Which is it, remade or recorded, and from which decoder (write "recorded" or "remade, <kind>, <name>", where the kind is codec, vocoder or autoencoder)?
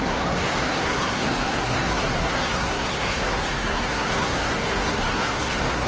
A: remade, codec, SNAC